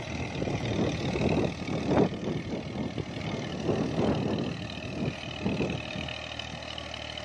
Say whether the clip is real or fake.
real